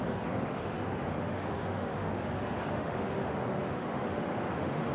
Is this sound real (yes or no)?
no